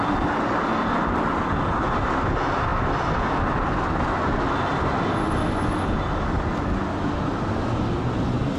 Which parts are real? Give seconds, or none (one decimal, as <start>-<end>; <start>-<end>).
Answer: 0.0-8.6